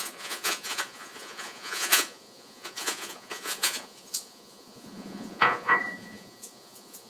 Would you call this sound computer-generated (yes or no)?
yes